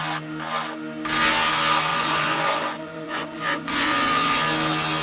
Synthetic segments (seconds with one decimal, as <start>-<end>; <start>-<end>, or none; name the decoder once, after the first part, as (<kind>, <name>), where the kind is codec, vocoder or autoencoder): 1.9-4.4 (vocoder, Vocos)